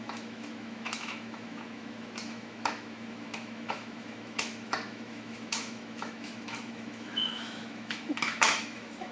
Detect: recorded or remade remade